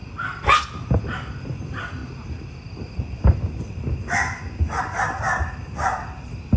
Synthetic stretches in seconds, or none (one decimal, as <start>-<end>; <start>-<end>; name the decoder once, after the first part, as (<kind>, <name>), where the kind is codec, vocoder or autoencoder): none